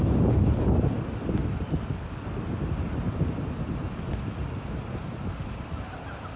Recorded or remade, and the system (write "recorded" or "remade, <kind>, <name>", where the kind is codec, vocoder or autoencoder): recorded